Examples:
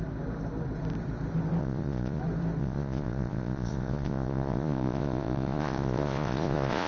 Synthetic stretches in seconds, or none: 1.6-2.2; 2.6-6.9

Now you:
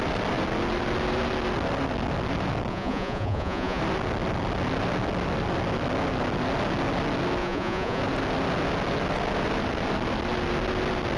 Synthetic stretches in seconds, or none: 2.7-3.8; 7.4-8.0

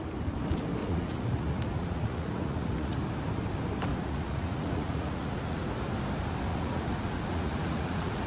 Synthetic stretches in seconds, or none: 0.8-3.0; 3.9-5.6; 6.5-8.3

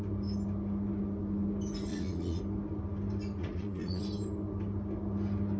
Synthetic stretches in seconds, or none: 1.9-2.4; 3.4-4.0

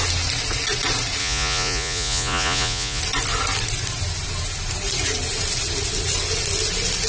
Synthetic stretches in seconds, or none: 1.2-3.0

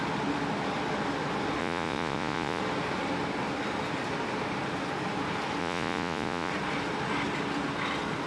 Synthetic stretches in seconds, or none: 1.6-2.6; 5.6-6.5

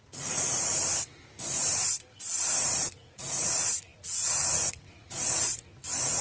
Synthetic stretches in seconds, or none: 0.0-0.7; 2.1-6.2